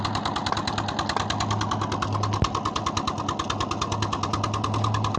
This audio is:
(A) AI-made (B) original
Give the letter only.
B